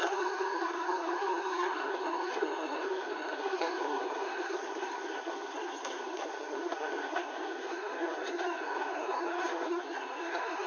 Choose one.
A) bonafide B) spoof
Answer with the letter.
B